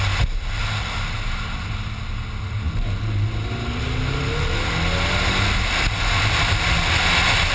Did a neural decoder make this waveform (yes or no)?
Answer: no